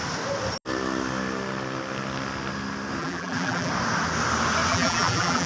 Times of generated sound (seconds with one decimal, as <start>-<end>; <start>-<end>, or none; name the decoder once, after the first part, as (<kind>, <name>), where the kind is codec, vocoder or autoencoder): 3.0-3.7 (vocoder, BigVGAN v2); 4.7-5.5